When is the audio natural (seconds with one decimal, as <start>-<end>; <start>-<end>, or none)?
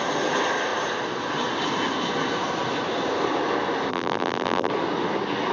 0.0-3.9; 4.7-5.5